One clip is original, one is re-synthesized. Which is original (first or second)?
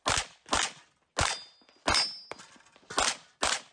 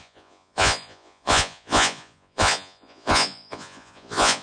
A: first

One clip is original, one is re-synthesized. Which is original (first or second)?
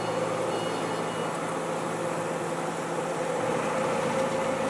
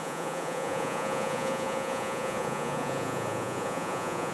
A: first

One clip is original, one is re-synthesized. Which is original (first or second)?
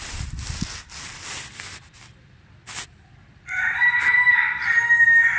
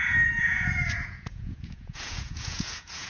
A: first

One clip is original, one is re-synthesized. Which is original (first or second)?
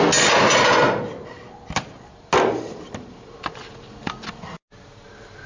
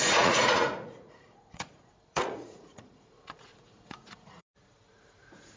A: first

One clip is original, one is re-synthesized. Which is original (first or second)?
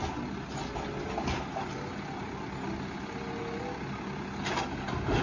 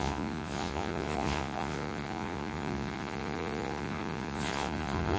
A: first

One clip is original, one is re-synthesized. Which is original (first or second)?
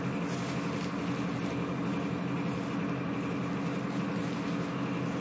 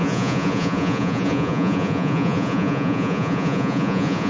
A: first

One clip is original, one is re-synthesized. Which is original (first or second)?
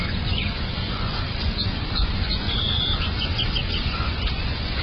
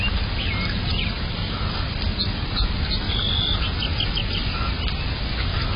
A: second